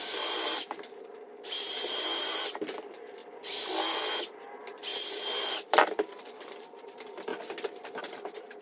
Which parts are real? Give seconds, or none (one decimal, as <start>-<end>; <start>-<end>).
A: 3.2-4.2; 4.9-5.5; 7.3-8.0